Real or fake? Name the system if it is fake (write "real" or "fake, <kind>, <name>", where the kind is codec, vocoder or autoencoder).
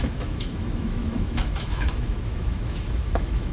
fake, autoencoder, DAC-VAE